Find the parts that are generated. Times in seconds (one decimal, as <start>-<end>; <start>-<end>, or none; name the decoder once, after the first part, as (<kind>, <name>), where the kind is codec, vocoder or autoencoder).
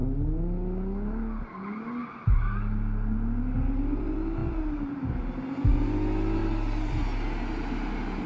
6.4-6.9 (vocoder, BigVGAN v2)